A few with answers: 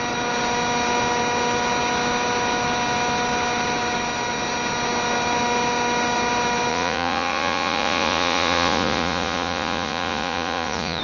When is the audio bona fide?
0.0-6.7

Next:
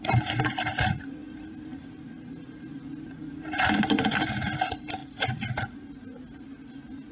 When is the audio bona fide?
0.0-7.1

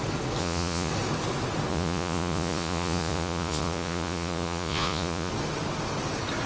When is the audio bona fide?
0.0-0.4; 0.9-1.7; 5.3-6.5

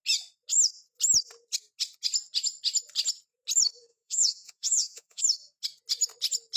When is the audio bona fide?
0.0-3.9; 5.2-6.6

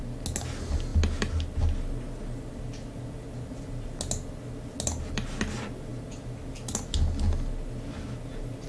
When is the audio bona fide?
0.0-8.7

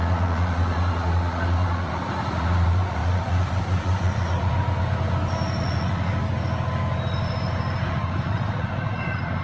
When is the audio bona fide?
4.5-5.6; 6.1-7.9